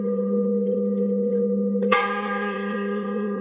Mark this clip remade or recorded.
remade